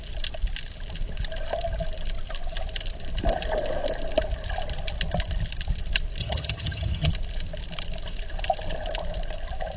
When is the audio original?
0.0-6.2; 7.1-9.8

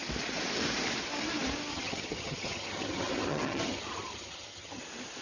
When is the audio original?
0.0-1.7; 4.8-5.2

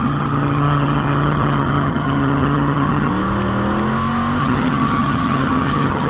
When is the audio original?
3.1-4.4

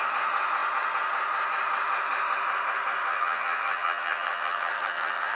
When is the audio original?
0.0-3.1

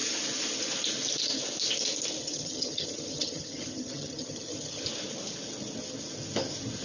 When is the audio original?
0.0-2.2; 4.8-6.8